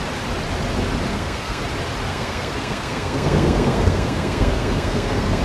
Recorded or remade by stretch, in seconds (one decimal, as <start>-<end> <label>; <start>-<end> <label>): 0.0-1.1 recorded; 1.1-1.6 remade; 1.6-2.1 recorded; 2.1-5.4 remade